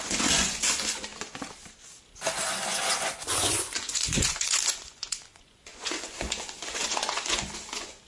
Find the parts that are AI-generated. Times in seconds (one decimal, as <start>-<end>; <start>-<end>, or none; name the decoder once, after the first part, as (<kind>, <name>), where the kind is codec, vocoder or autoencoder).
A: 0.0-1.1 (vocoder, Vocos); 2.4-8.1